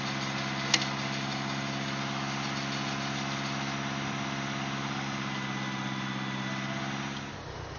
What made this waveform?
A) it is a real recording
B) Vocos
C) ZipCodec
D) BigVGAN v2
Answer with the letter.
A